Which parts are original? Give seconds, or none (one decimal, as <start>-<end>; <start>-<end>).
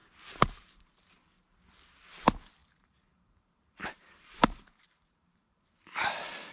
0.0-2.6; 5.6-6.5